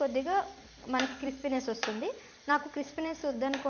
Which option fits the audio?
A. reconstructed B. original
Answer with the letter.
A